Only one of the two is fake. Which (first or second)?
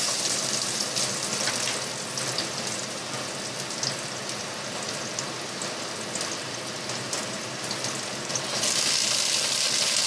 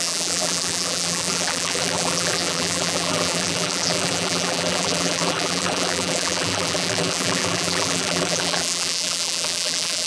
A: second